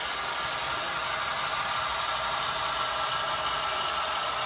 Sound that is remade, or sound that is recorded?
recorded